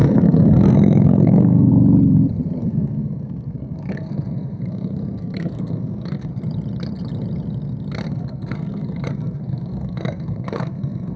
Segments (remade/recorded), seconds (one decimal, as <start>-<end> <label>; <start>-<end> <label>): 0.0-1.7 remade; 1.7-2.6 recorded; 2.6-6.3 remade; 6.3-8.1 recorded; 8.1-11.2 remade